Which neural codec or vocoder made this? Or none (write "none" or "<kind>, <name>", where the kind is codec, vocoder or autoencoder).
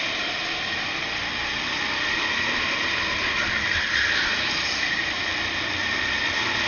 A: none